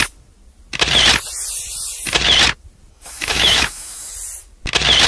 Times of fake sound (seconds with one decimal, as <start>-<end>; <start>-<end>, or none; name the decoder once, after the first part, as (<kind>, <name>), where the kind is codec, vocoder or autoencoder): 2.9-4.1 (autoencoder, DAC-VAE)